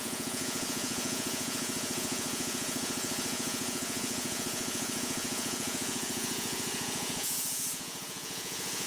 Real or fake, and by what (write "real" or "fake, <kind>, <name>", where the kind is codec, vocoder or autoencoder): fake, vocoder, Vocos